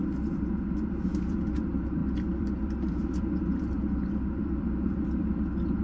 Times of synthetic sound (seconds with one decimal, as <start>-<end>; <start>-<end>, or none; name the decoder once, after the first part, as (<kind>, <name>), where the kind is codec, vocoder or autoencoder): 0.0-5.8 (vocoder, BigVGAN v2)

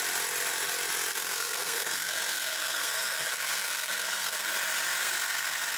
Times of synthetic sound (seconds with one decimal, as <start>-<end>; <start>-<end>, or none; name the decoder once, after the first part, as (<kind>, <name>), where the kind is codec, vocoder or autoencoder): 1.1-4.5 (codec, SNAC); 5.0-5.8

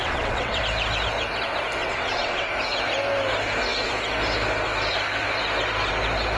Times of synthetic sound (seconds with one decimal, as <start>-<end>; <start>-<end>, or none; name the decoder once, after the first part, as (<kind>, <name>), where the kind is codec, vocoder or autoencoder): 0.0-0.6 (vocoder, WaveNeXt); 1.8-2.5

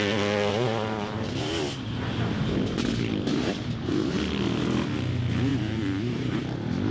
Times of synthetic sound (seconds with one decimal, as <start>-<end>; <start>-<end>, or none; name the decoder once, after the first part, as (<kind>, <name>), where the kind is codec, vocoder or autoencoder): 0.5-3.9 (vocoder, BigVGAN v2); 5.5-6.4